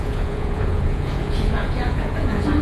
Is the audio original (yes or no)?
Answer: no